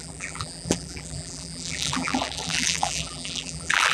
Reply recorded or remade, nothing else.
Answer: remade